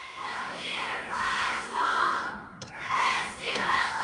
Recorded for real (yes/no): no